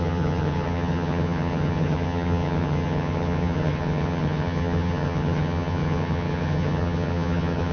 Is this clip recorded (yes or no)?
no